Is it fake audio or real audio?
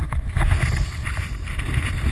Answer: real